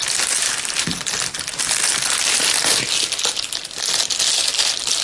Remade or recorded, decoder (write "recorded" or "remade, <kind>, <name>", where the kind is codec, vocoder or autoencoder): recorded